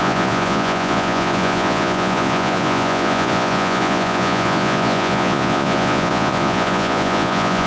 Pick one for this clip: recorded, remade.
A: remade